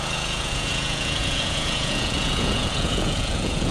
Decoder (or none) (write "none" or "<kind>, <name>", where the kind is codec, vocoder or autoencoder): vocoder, Vocos